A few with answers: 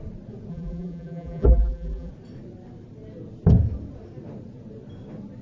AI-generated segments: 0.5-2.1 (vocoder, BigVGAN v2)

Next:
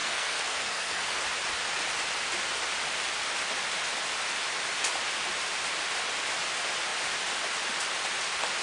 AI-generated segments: 0.0-1.2 (codec, SNAC)

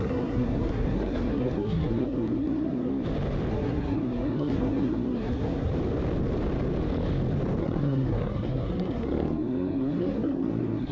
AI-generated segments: 0.0-2.9 (codec, SNAC); 3.5-5.7; 7.6-10.9

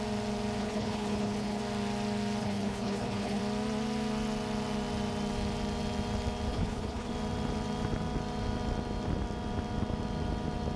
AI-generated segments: 0.6-1.6 (codec, HILCodec); 2.4-3.4; 6.5-7.1

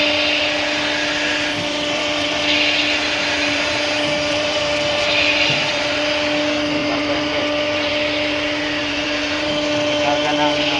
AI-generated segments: 1.5-2.4 (vocoder, BigVGAN v2); 3.2-6.0; 6.8-7.9; 8.8-9.5